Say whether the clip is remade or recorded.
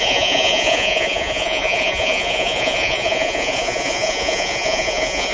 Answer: remade